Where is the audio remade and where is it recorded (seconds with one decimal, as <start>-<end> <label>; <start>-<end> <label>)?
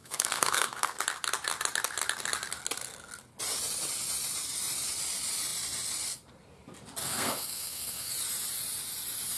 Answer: 0.0-1.0 remade; 1.0-7.0 recorded; 7.0-8.1 remade; 8.1-9.4 recorded